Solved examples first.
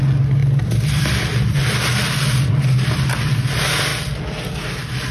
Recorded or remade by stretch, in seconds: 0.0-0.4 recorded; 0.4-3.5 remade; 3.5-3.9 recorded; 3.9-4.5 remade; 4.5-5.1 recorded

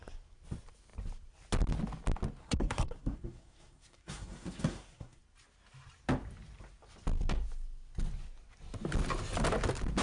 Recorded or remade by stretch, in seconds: 0.0-2.4 recorded; 2.4-5.2 remade; 5.2-10.0 recorded